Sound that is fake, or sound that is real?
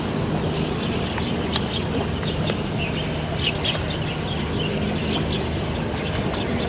real